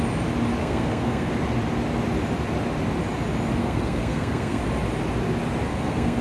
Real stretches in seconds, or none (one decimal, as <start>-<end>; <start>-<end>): 0.0-0.6; 1.3-3.6; 4.6-5.7